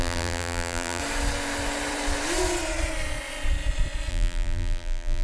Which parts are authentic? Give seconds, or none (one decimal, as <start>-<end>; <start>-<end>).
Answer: 1.0-4.1